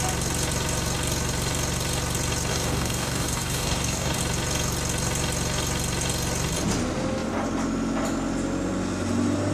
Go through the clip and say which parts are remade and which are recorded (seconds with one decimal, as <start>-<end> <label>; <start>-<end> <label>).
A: 0.0-2.5 recorded; 2.5-4.2 remade; 4.2-9.5 recorded